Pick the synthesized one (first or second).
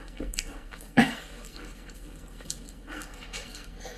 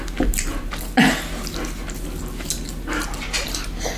first